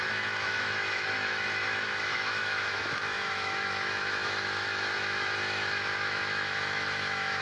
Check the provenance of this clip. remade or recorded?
remade